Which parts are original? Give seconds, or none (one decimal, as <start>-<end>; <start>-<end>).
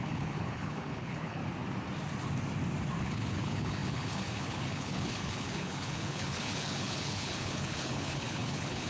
1.4-3.0